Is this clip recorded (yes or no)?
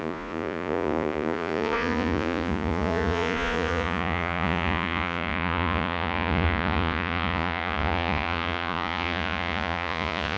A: no